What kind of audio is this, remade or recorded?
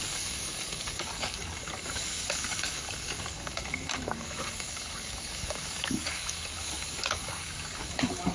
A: remade